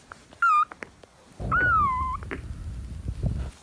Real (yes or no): yes